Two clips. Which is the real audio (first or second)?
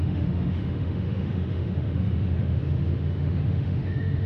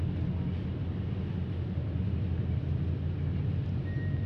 second